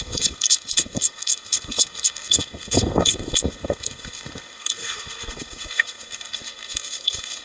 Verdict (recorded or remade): remade